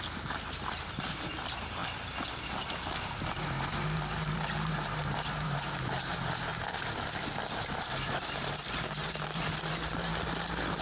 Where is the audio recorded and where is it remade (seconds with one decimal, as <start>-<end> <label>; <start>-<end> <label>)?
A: 0.0-1.8 remade; 1.8-2.6 recorded; 2.6-6.5 remade; 6.5-7.5 recorded; 7.5-10.1 remade; 10.1-10.8 recorded